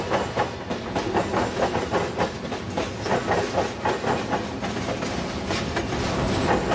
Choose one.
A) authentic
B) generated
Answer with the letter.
A